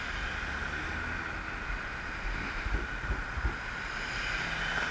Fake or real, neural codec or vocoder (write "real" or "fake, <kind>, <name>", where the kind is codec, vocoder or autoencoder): real